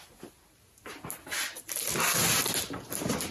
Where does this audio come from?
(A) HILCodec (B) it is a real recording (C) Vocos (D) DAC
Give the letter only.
B